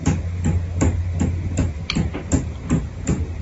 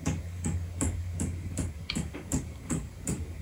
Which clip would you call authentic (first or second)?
first